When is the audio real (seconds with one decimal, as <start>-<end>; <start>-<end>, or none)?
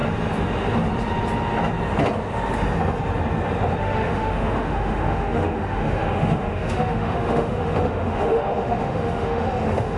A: 0.0-3.8